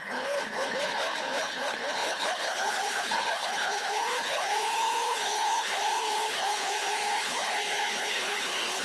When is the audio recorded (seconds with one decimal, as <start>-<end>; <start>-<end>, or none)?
none